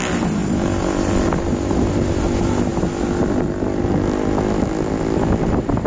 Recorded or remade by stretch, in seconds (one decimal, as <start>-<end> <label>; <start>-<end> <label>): 0.0-5.9 recorded